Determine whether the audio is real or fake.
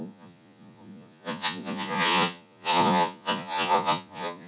fake